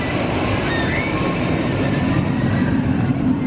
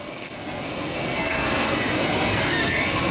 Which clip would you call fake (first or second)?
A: second